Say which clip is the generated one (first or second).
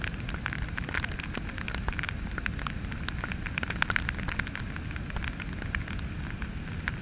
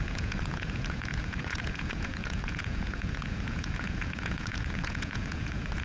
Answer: second